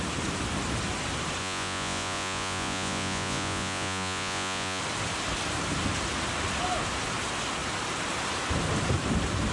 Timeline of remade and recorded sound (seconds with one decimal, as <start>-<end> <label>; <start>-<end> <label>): 0.0-1.4 recorded; 1.4-4.8 remade; 4.8-9.5 recorded